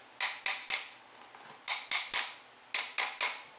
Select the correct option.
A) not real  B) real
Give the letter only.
B